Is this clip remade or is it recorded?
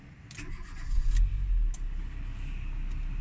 recorded